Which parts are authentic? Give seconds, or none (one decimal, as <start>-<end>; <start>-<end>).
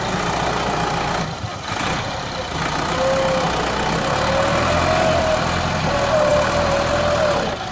0.0-7.7